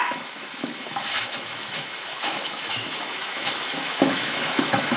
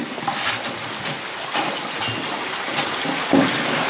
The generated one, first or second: first